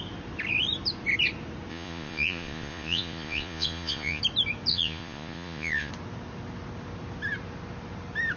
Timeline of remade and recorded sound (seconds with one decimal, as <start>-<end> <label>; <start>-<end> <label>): 0.0-1.7 recorded; 1.7-4.2 remade; 4.2-4.7 recorded; 4.7-5.9 remade; 5.9-8.4 recorded